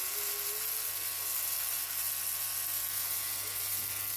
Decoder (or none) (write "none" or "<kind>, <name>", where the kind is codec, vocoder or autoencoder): none